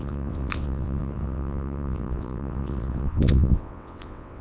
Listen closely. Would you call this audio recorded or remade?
remade